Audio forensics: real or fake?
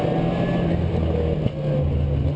real